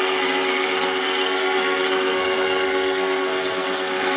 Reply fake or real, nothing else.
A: fake